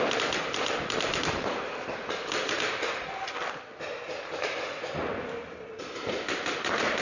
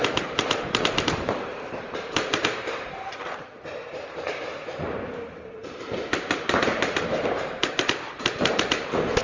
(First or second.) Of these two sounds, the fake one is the second